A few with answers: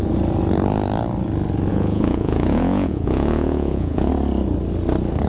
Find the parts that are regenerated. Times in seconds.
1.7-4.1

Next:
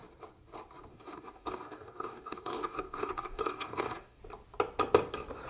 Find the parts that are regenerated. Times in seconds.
0.9-4.2

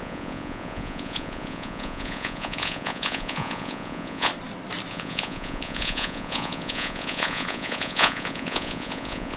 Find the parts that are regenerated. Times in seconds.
0.0-4.3; 4.9-9.4

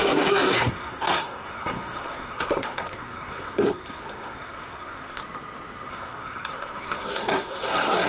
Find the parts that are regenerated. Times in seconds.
0.0-5.2; 5.9-8.1

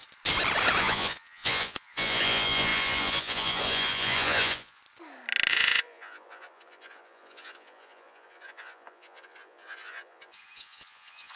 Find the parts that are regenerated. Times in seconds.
0.8-4.8; 5.5-11.4

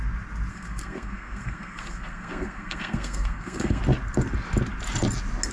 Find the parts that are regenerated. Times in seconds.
0.5-3.8

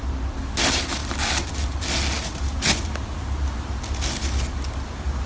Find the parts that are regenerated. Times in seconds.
none

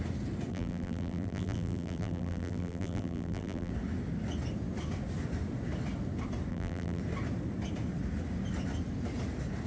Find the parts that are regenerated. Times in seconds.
0.5-3.7; 6.5-7.0